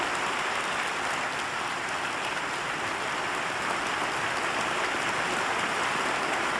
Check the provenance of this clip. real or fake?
real